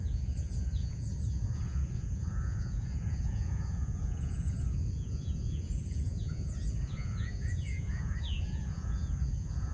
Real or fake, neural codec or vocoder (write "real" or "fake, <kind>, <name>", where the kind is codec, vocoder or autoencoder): fake, vocoder, Vocos